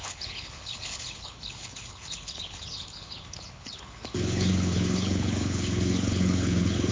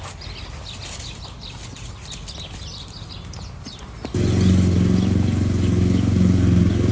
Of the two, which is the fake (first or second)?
first